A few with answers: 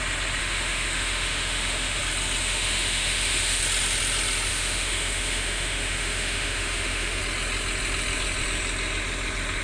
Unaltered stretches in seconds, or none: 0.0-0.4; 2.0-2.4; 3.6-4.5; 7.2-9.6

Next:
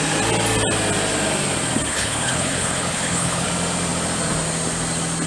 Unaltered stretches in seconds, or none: 0.0-1.9; 3.5-5.3

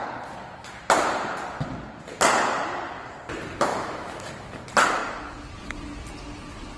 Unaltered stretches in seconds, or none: 0.0-3.7; 4.3-6.8

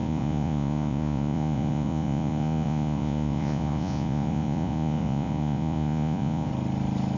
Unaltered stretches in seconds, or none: 6.5-7.2

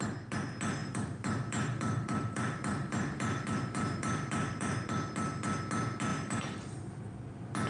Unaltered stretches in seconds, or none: 0.0-0.8; 4.9-6.1; 6.8-7.7

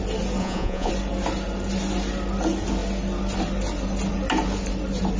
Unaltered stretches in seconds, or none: 0.0-0.4; 0.9-5.2